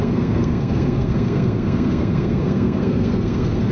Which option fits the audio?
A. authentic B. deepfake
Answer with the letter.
B